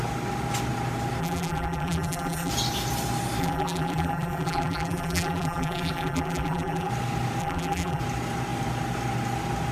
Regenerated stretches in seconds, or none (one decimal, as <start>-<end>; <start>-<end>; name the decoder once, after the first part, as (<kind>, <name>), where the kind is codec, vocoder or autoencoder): 1.2-2.5 (vocoder, BigVGAN v2); 3.4-6.9; 7.4-8.0